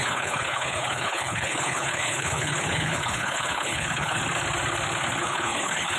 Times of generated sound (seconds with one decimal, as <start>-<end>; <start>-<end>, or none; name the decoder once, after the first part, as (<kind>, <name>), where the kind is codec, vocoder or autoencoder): 0.0-4.2 (codec, HILCodec); 5.2-6.0